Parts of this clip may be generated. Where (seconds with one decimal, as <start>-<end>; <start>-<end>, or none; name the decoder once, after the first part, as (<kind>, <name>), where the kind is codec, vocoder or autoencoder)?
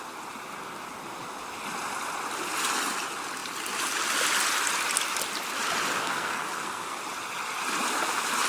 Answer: 6.0-7.0 (codec, SNAC)